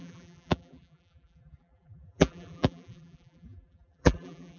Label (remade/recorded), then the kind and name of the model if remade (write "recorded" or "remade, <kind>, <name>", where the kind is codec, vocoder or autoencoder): remade, vocoder, BigVGAN v2